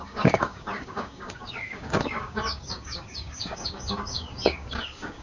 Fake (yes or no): yes